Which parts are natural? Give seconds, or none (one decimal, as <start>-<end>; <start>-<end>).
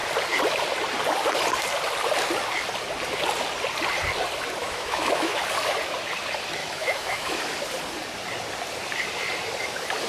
0.0-4.6; 5.4-6.6; 7.5-10.1